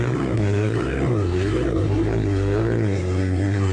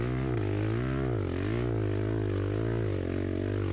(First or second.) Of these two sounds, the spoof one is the first